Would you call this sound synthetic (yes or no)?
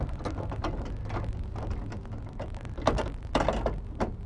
no